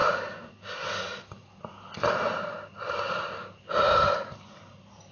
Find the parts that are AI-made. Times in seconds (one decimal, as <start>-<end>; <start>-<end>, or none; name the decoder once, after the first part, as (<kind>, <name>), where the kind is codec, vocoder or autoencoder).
none